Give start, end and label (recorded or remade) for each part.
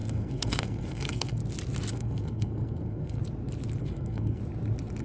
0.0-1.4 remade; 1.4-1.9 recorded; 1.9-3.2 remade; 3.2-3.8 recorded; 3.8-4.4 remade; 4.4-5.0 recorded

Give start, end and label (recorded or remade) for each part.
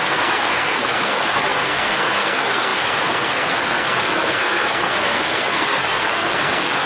0.0-6.9 remade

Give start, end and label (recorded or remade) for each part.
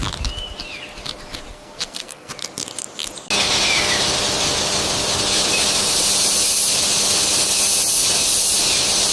0.0-1.5 recorded; 1.5-2.3 remade; 2.3-9.1 recorded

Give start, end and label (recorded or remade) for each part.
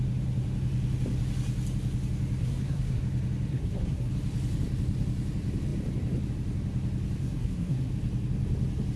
0.0-2.4 recorded; 2.4-3.0 remade; 3.0-3.5 recorded; 3.5-4.1 remade; 4.1-7.2 recorded; 7.2-7.9 remade; 7.9-9.0 recorded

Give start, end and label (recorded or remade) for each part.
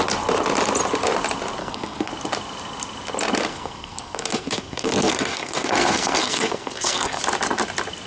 0.0-1.6 recorded; 1.6-2.1 remade; 2.1-3.5 recorded; 3.5-7.2 remade; 7.2-8.1 recorded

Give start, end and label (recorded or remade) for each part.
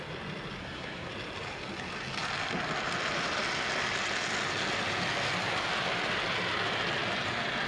0.0-0.6 recorded; 0.6-1.1 remade; 1.1-7.7 recorded